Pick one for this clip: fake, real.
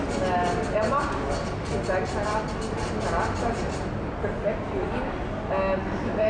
real